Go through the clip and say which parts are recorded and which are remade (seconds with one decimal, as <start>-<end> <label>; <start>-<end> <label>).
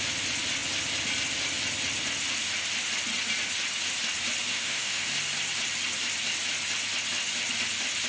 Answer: 0.0-4.5 recorded; 4.5-5.1 remade; 5.1-8.1 recorded